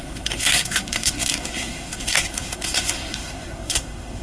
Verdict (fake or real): fake